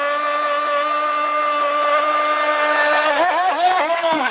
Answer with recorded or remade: recorded